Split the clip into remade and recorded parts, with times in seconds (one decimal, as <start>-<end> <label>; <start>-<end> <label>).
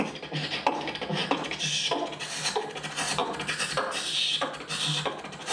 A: 0.0-5.5 recorded